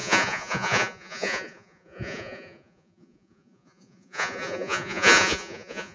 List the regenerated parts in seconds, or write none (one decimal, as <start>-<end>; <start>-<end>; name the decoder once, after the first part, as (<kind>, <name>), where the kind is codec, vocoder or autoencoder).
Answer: 0.0-5.9 (vocoder, Vocos)